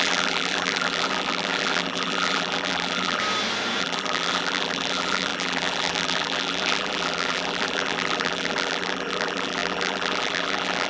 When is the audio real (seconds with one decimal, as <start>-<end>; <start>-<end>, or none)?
3.2-3.8